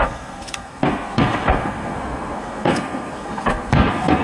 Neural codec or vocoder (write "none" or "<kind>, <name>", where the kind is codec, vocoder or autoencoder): codec, SNAC